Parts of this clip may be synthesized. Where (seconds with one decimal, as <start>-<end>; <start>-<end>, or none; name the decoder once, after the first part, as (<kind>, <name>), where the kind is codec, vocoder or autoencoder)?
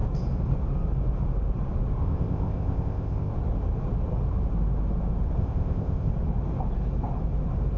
2.0-3.3 (codec, ZipCodec); 5.4-6.1